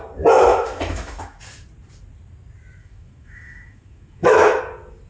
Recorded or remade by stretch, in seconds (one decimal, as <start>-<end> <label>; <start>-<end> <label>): 0.0-0.5 recorded; 0.5-1.4 remade; 1.4-2.8 recorded; 2.8-4.6 remade; 4.6-5.1 recorded